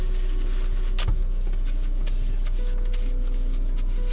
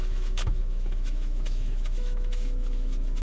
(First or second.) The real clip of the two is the first